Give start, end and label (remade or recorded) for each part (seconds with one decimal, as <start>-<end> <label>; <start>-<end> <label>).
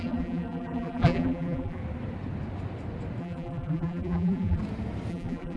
0.0-1.8 remade; 1.8-3.2 recorded; 3.2-4.6 remade; 4.6-5.1 recorded; 5.1-5.6 remade